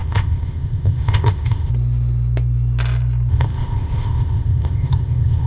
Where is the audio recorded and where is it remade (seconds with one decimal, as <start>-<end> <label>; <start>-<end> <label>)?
0.0-1.7 remade; 1.7-3.3 recorded; 3.3-5.5 remade